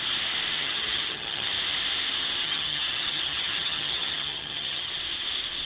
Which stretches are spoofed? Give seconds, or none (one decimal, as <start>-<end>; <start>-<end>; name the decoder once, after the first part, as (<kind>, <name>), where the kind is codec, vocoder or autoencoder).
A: 0.6-1.5 (vocoder, HiFi-GAN); 2.4-4.9

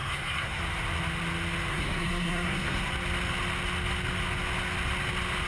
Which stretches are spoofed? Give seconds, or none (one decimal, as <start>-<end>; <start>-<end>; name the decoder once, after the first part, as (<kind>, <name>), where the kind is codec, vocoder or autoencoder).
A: 0.0-0.6 (codec, SNAC); 1.7-2.9

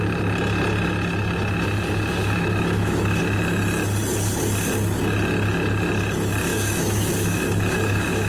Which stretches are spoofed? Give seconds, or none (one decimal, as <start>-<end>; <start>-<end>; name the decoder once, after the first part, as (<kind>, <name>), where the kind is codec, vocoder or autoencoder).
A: 2.2-3.2 (autoencoder, DAC-VAE); 6.5-8.3